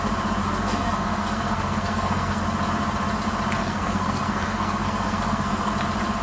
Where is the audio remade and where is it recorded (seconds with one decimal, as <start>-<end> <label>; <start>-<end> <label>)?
0.0-0.4 recorded; 0.4-2.4 remade; 2.4-3.6 recorded; 3.6-5.7 remade; 5.7-6.2 recorded